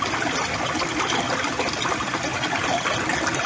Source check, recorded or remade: recorded